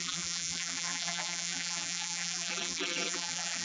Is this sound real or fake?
fake